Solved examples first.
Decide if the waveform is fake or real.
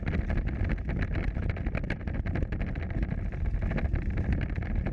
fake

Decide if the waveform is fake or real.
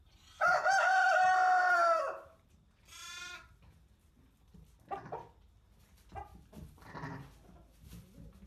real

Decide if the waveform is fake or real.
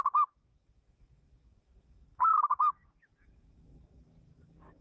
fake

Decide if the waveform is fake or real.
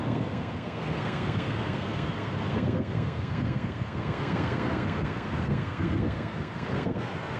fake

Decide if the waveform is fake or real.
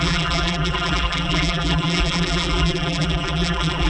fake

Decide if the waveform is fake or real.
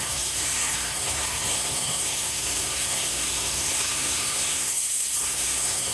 fake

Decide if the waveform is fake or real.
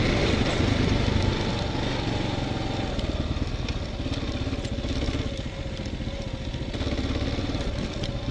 real